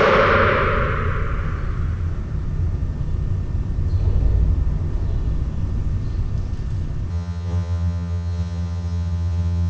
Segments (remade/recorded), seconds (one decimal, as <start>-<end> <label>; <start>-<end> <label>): 0.0-7.1 recorded; 7.1-9.7 remade